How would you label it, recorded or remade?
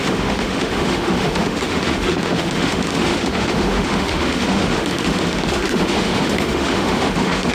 remade